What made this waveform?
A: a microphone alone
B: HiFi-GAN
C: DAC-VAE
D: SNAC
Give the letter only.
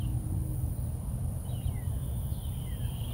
A